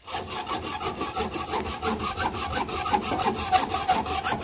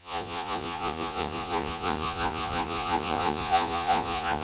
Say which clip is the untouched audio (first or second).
first